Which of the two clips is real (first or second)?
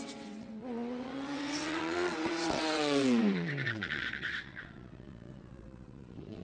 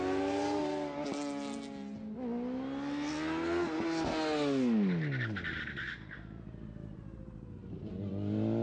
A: second